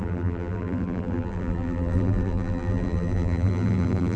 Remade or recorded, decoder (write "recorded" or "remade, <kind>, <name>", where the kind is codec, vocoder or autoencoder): remade, vocoder, BigVGAN v2